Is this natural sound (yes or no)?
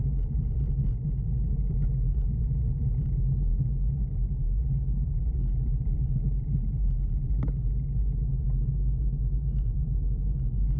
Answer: no